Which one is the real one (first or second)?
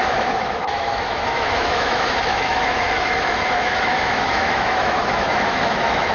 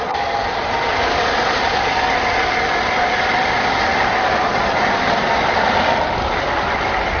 second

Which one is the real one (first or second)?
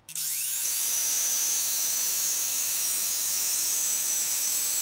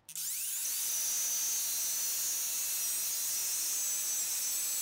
second